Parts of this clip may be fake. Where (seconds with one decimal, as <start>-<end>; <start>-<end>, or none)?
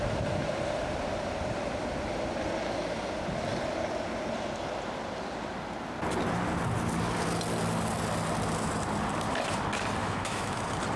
10.0-10.6